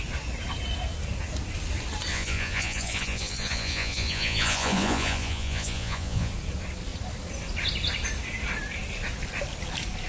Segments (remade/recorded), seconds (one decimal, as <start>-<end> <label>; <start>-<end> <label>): 0.0-2.1 recorded; 2.1-6.3 remade; 6.3-10.1 recorded